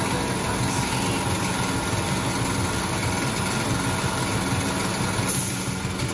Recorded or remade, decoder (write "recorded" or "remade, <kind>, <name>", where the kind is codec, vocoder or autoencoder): recorded